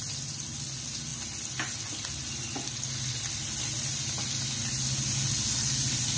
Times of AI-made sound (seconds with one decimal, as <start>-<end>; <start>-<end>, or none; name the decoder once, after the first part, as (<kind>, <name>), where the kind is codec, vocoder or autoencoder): none